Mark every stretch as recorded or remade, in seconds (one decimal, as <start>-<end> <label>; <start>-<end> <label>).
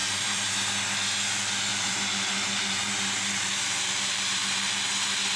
0.0-0.5 remade; 0.5-1.7 recorded; 1.7-4.9 remade; 4.9-5.4 recorded